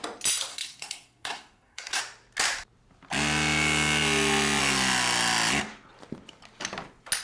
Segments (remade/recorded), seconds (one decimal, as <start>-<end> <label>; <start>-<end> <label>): 0.0-0.5 recorded; 0.5-2.0 remade; 2.0-7.2 recorded